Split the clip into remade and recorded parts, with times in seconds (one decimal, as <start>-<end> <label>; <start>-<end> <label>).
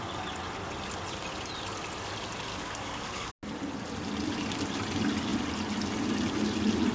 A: 0.0-2.5 recorded; 2.5-3.3 remade; 3.3-6.9 recorded